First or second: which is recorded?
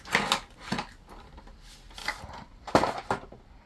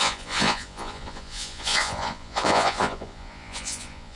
first